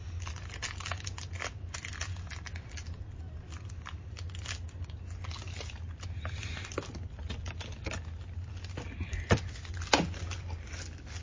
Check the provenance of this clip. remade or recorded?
recorded